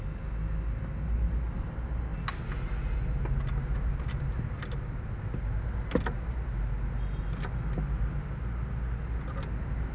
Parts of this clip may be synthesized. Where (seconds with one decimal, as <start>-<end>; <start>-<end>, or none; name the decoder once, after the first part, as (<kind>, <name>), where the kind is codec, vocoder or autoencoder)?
none